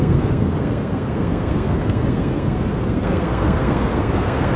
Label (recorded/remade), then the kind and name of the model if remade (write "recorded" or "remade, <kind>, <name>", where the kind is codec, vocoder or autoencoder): remade, codec, SNAC